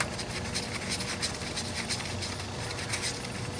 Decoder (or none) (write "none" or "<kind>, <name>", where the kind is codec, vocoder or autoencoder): none